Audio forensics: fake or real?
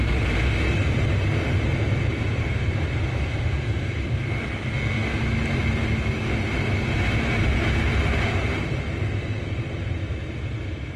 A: real